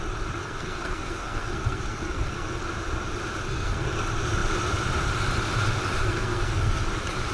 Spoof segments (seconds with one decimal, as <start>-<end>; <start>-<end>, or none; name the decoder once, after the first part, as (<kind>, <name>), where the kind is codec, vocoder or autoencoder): 0.4-2.6 (codec, SNAC); 3.5-4.0; 6.0-6.8